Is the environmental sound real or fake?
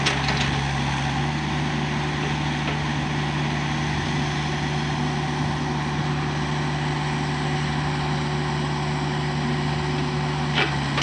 real